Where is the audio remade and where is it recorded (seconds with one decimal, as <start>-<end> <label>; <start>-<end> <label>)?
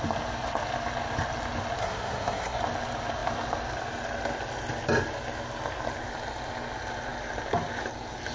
0.0-1.8 recorded; 1.8-2.6 remade; 2.6-8.3 recorded